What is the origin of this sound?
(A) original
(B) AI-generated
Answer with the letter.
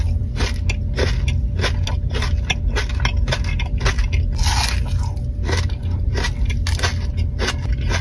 A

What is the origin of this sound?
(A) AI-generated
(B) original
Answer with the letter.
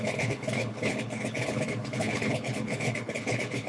A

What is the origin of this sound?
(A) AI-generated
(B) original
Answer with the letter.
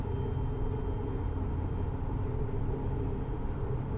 B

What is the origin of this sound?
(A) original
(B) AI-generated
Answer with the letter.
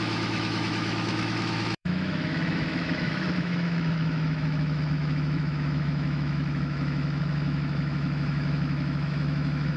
B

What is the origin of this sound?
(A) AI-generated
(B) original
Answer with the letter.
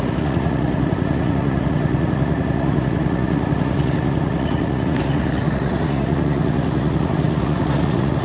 A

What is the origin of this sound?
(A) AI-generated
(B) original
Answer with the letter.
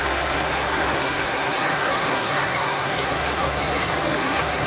A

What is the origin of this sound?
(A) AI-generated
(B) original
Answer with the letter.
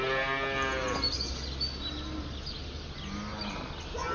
B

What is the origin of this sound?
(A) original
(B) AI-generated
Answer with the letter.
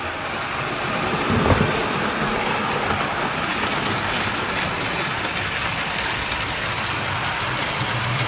A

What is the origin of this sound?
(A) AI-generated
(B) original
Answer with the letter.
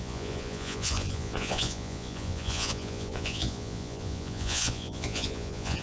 A